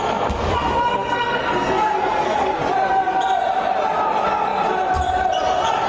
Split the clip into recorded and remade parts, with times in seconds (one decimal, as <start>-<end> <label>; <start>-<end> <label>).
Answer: 0.0-0.9 recorded; 0.9-2.6 remade; 2.6-5.9 recorded